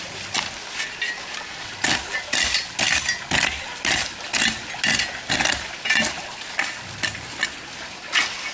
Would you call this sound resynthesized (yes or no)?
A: no